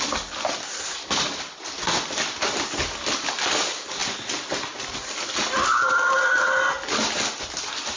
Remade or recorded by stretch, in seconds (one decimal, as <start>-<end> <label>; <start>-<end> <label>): 0.0-4.0 remade; 4.0-7.5 recorded; 7.5-8.0 remade